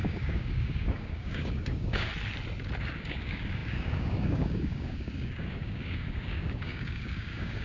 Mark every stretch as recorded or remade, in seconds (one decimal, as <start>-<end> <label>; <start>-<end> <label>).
0.0-2.1 remade; 2.1-2.8 recorded; 2.8-7.6 remade